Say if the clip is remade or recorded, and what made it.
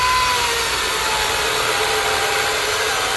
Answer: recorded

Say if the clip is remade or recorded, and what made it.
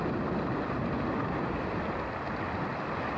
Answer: recorded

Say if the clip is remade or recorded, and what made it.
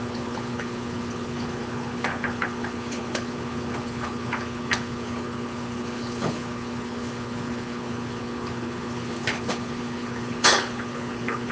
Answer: remade, codec, HILCodec